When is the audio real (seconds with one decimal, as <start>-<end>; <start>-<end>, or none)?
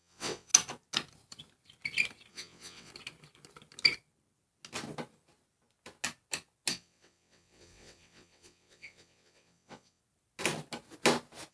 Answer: 0.5-2.3; 2.9-6.7; 10.0-11.5